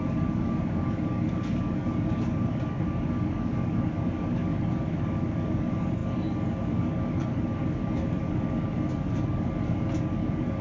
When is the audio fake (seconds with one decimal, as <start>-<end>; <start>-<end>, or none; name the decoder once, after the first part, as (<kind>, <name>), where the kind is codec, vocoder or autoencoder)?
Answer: 0.0-10.6 (codec, DAC)